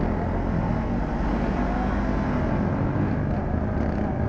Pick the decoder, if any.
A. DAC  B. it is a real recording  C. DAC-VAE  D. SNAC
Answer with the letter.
B